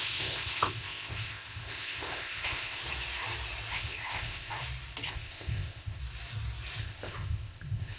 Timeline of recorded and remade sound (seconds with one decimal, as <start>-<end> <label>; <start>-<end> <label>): 0.0-2.8 remade; 2.8-3.7 recorded; 3.7-4.5 remade; 4.5-5.1 recorded; 5.1-6.0 remade; 6.0-6.8 recorded; 6.8-8.0 remade